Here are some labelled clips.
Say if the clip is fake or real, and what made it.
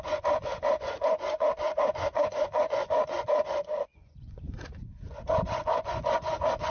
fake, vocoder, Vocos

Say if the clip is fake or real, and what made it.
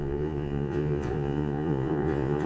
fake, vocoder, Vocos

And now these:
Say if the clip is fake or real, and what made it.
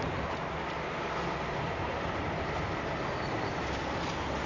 real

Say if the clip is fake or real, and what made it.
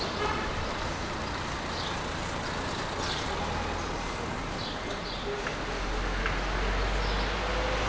real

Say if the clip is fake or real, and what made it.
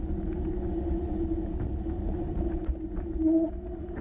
real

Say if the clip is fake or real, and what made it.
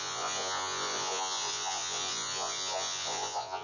fake, vocoder, Vocos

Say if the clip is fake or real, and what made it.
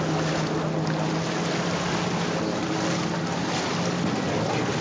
real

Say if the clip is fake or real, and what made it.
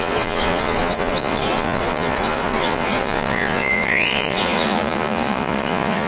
fake, vocoder, Vocos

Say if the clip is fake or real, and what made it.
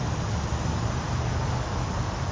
real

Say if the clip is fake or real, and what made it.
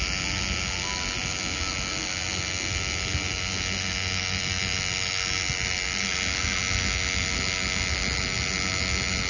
real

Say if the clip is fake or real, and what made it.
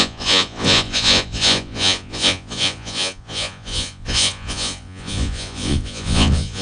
fake, vocoder, Vocos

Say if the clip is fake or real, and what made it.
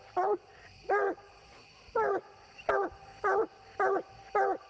real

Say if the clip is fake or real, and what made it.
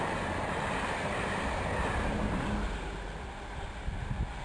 real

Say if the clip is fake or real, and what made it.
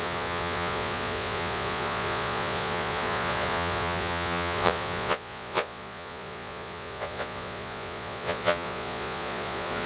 fake, vocoder, Vocos